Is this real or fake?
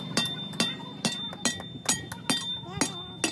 real